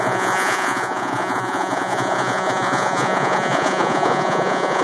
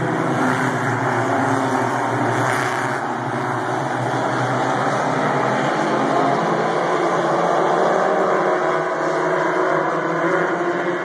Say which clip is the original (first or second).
second